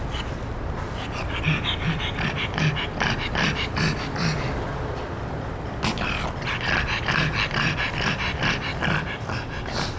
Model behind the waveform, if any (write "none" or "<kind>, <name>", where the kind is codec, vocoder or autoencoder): none